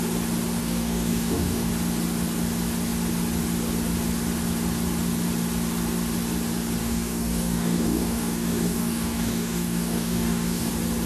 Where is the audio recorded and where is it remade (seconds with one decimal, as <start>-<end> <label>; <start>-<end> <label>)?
0.0-0.6 recorded; 0.6-1.7 remade; 1.7-6.8 recorded; 6.8-10.7 remade; 10.7-11.1 recorded